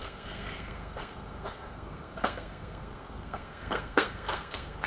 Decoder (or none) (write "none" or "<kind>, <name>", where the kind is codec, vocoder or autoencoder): codec, SNAC